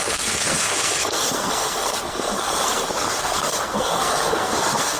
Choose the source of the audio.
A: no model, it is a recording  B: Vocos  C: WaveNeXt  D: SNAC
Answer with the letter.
D